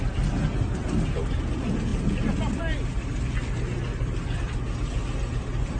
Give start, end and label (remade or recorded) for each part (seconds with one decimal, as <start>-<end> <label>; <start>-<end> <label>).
0.0-5.8 recorded